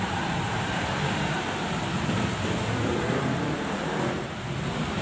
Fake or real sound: fake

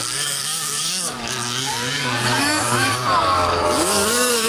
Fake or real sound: fake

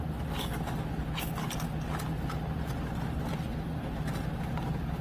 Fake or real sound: real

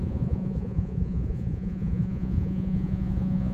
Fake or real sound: fake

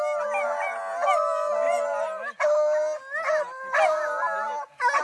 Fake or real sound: real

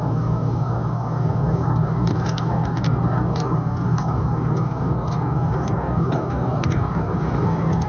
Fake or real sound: fake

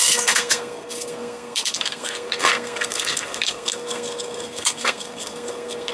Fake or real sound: fake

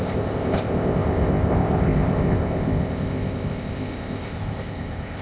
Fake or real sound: fake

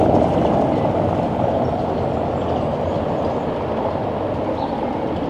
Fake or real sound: real